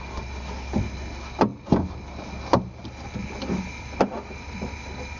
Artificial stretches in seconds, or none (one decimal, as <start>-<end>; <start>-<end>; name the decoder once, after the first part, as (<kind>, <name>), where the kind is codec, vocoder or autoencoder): none